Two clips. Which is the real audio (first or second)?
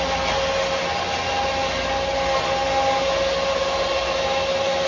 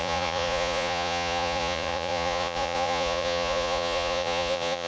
first